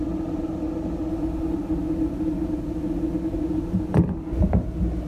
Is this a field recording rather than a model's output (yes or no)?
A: yes